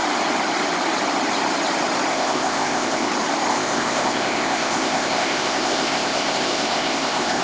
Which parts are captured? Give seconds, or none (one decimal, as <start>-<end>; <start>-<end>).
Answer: 0.0-2.1; 3.1-3.5